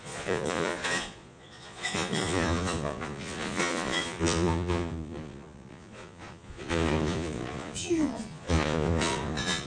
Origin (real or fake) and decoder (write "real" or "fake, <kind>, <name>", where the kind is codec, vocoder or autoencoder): fake, vocoder, Vocos